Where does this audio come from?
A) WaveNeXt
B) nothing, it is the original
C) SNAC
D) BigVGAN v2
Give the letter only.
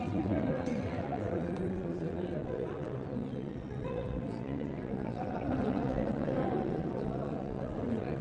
A